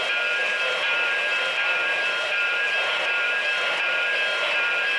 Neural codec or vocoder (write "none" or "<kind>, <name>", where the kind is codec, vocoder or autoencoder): vocoder, BigVGAN v2